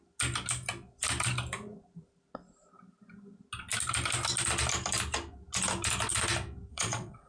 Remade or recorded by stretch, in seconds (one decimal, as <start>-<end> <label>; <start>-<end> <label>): 0.0-6.7 recorded; 6.7-7.3 remade